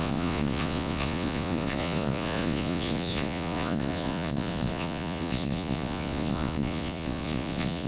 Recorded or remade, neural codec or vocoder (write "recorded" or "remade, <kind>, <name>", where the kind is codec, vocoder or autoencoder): remade, vocoder, Vocos